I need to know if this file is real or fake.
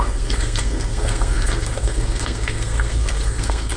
fake